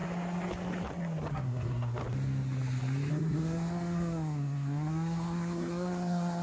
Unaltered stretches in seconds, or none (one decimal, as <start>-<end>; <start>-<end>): 0.0-1.3; 2.0-3.1